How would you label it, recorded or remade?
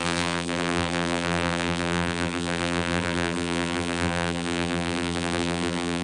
remade